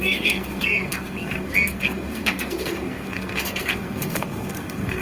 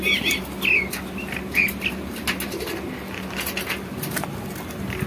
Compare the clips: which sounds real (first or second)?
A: second